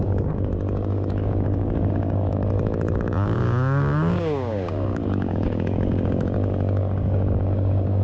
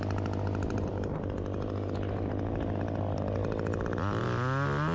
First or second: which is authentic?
second